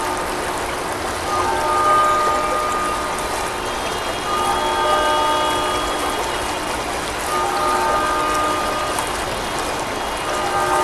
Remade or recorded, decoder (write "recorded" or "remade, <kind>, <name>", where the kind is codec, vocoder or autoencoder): recorded